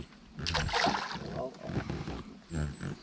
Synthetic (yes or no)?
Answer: no